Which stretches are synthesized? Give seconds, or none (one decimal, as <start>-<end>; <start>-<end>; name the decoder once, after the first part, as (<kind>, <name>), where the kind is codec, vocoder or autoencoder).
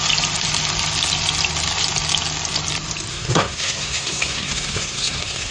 3.1-5.5 (codec, SNAC)